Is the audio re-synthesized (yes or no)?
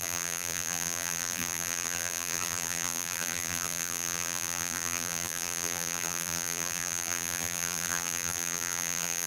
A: yes